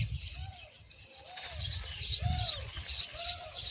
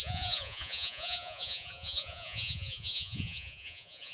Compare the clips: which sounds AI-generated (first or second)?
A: second